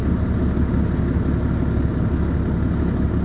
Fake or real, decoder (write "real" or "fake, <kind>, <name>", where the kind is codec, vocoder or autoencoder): real